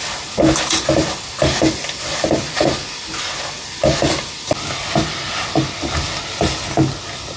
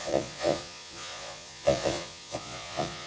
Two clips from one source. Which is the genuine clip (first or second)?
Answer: first